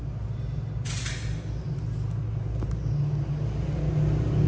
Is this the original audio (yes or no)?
yes